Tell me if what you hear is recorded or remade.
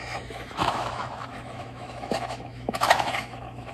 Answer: remade